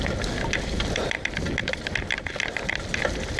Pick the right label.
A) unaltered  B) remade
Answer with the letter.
A